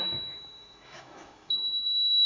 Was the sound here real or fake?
fake